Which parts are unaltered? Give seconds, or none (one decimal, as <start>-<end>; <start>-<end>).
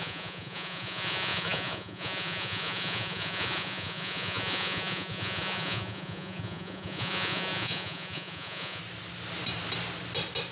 8.8-10.5